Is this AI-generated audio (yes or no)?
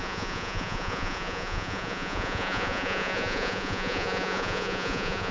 yes